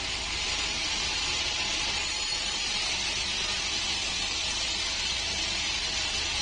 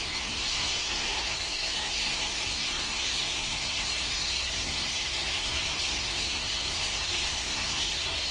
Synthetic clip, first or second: second